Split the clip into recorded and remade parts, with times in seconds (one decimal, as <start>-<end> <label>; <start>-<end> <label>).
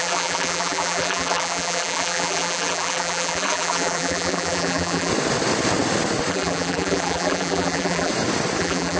0.0-5.1 remade; 5.1-6.3 recorded; 6.3-8.1 remade; 8.1-8.6 recorded; 8.6-9.0 remade